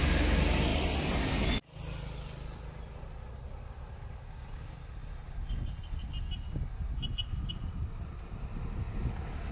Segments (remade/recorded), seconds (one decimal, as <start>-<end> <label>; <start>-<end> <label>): 0.0-9.5 recorded